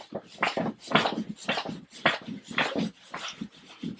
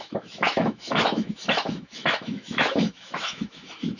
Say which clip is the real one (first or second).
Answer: first